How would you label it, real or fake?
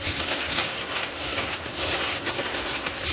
fake